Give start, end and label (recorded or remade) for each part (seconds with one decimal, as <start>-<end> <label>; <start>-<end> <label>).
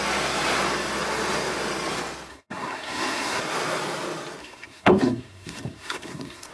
0.0-2.3 recorded; 2.3-3.4 remade; 3.4-4.4 recorded; 4.4-6.5 remade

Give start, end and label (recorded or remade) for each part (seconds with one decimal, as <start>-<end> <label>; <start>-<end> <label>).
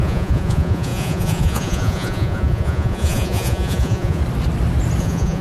0.0-4.2 remade; 4.2-5.0 recorded; 5.0-5.4 remade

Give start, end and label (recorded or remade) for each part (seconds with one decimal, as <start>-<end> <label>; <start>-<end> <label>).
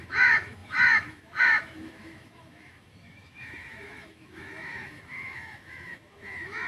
0.0-6.7 remade